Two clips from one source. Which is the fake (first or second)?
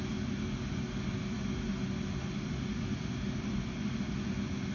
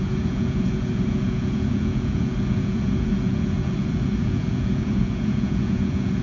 second